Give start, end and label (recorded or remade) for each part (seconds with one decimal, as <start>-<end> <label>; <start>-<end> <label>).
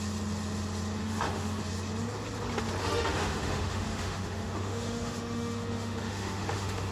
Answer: 0.0-1.0 recorded; 1.0-1.6 remade; 1.6-2.8 recorded; 2.8-6.9 remade